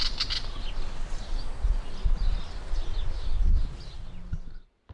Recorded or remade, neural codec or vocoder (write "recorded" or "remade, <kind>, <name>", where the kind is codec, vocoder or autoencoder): recorded